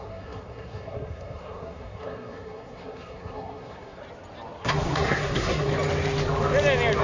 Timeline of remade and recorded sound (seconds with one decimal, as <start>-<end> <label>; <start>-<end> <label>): 0.0-4.0 remade; 4.0-4.6 recorded; 4.6-5.7 remade; 5.7-7.0 recorded